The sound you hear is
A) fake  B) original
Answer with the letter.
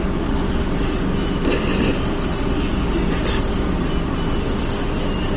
B